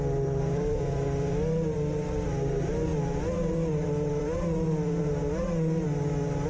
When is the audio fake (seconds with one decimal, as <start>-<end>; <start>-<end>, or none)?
none

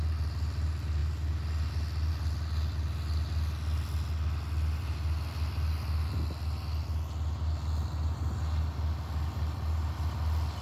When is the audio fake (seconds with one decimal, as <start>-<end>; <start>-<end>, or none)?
none

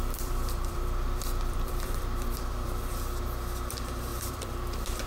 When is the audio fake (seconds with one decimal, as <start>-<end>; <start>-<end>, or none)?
0.0-5.1

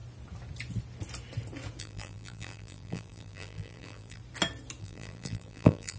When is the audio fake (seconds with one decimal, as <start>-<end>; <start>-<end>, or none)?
1.8-4.2; 4.8-6.0

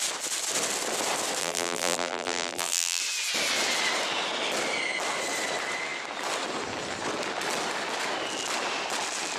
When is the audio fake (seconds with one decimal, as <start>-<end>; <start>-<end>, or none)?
1.4-3.0

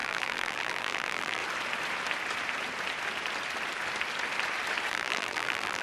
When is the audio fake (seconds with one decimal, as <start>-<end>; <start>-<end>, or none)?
0.0-1.4; 4.9-5.8

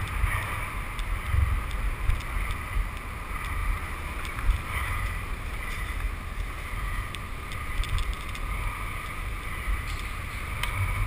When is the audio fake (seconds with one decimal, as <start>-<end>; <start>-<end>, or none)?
3.6-5.8

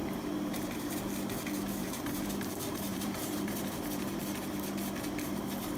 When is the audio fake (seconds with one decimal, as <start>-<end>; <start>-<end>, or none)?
0.0-0.9; 1.8-2.5; 2.9-4.2